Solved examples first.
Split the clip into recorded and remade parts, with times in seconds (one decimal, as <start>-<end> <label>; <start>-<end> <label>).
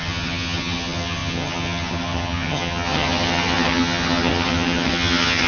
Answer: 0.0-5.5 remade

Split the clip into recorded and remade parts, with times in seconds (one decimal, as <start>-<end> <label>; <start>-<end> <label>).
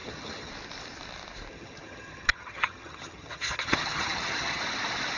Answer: 0.0-0.5 remade; 0.5-1.5 recorded; 1.5-4.6 remade; 4.6-5.2 recorded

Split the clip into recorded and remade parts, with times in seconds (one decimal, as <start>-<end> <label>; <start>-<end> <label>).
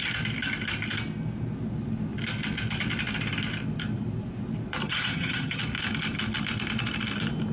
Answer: 0.0-4.8 recorded; 4.8-5.6 remade; 5.6-7.5 recorded